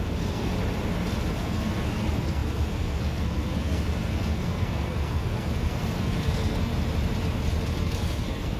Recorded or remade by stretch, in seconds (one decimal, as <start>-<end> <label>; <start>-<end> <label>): 0.0-0.5 remade; 0.5-1.3 recorded; 1.3-6.7 remade; 6.7-7.8 recorded; 7.8-8.6 remade